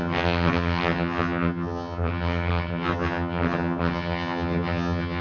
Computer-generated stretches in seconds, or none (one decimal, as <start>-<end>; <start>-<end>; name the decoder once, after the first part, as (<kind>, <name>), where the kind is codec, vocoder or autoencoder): 0.0-5.2 (vocoder, HiFi-GAN)